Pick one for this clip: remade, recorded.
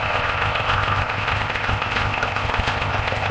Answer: remade